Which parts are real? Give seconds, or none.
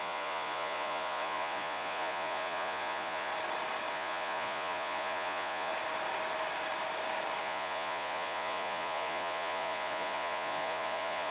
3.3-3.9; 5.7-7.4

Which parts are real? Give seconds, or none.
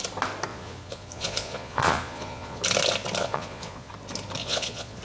0.0-0.5; 2.6-3.2; 3.9-4.4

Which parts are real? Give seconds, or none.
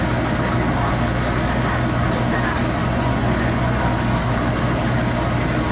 0.0-2.8; 3.8-5.7